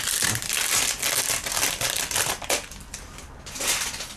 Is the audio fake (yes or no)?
no